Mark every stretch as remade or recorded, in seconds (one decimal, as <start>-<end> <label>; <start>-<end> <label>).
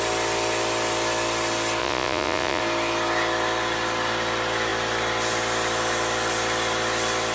0.0-1.8 recorded; 1.8-2.6 remade; 2.6-7.3 recorded